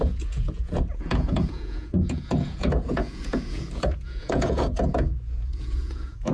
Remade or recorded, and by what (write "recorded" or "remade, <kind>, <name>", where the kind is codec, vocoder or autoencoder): remade, vocoder, Vocos